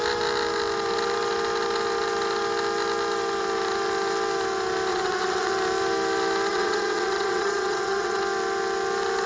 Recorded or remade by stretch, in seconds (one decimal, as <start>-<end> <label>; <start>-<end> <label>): 0.0-4.9 recorded; 4.9-5.5 remade; 5.5-6.5 recorded; 6.5-8.2 remade; 8.2-9.3 recorded